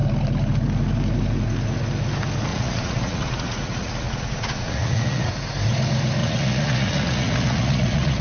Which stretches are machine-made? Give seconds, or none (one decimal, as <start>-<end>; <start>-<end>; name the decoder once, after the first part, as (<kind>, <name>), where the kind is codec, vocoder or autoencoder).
2.5-5.3 (vocoder, Vocos); 6.2-8.2